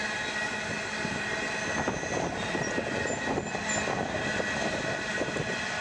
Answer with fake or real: real